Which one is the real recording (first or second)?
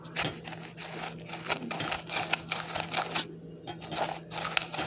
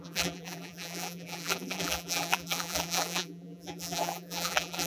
first